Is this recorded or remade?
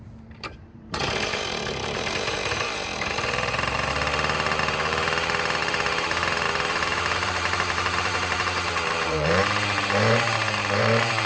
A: remade